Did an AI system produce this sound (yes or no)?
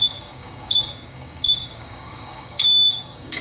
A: yes